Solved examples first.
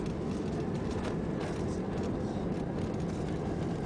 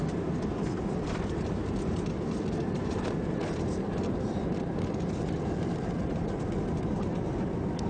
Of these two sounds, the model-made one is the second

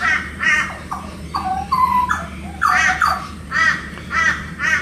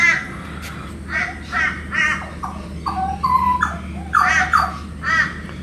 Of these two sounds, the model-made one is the first